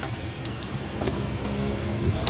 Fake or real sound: fake